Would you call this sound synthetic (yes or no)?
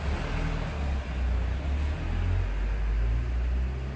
no